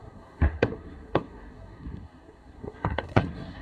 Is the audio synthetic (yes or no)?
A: yes